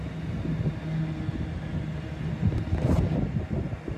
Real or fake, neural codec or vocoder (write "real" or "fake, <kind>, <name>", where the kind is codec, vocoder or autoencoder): real